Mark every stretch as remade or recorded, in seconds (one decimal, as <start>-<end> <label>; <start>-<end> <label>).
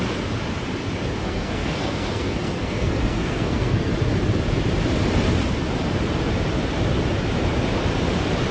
0.0-1.2 recorded; 1.2-3.9 remade; 3.9-8.5 recorded